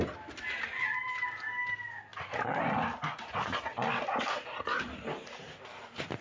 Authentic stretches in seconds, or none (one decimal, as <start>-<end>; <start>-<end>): 0.0-6.2

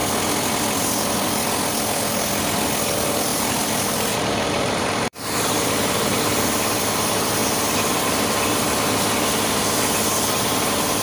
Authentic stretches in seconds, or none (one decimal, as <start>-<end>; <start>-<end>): 0.0-3.3; 6.2-11.0

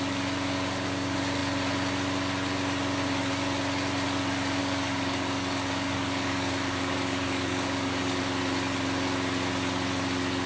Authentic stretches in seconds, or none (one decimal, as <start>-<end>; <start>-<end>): 0.0-4.6; 8.2-10.5

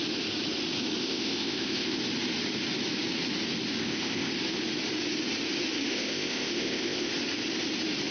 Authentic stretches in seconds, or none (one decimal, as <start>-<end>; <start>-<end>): 0.0-1.0; 2.0-3.8; 4.3-5.9; 7.1-8.1

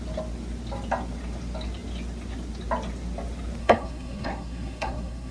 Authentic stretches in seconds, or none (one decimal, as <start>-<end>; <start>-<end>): 0.0-3.6

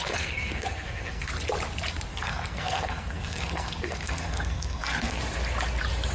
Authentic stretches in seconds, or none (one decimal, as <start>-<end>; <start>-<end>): 1.3-2.1; 5.2-6.1

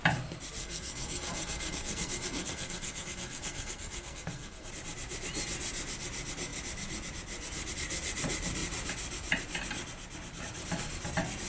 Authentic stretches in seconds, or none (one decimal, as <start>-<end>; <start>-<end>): 0.0-0.6; 4.7-11.5